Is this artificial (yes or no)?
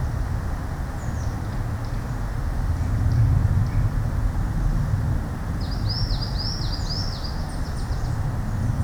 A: no